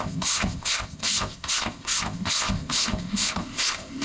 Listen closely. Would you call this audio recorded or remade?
remade